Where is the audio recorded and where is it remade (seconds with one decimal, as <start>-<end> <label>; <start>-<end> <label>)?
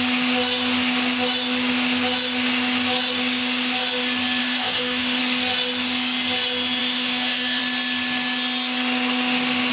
0.0-4.4 recorded; 4.4-5.2 remade; 5.2-6.8 recorded; 6.8-7.6 remade; 7.6-9.7 recorded